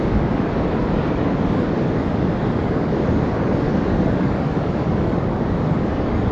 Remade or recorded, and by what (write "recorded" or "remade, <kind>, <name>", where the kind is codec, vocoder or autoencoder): remade, codec, DAC